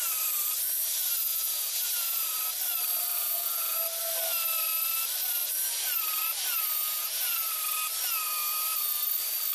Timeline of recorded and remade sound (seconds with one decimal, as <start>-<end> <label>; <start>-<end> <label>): 0.0-1.3 recorded; 1.3-2.2 remade; 2.2-3.1 recorded; 3.1-3.8 remade; 3.8-6.8 recorded; 6.8-7.5 remade; 7.5-9.5 recorded